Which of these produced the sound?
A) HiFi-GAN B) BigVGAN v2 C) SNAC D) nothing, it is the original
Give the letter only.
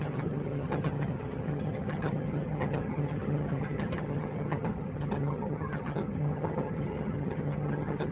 A